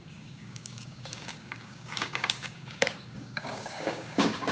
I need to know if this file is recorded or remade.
remade